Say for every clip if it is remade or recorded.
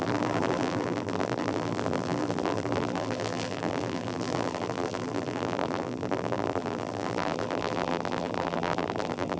remade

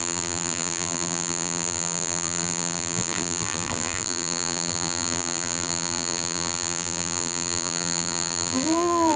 remade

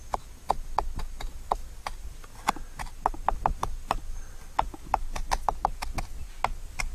recorded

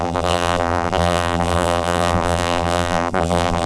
remade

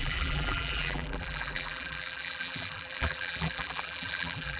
remade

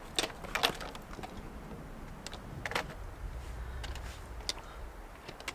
recorded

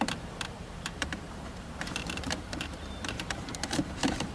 remade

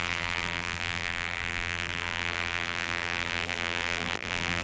remade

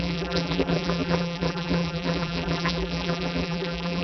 remade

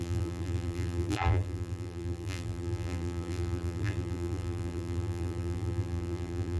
remade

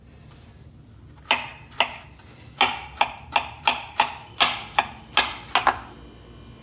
recorded